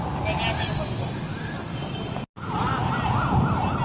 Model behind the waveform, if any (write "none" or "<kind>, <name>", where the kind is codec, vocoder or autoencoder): none